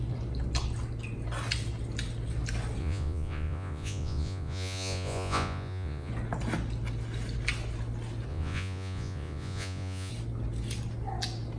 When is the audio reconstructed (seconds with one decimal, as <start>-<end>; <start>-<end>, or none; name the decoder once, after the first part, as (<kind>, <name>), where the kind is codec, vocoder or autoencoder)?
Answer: 2.8-6.1 (vocoder, Vocos); 8.3-10.1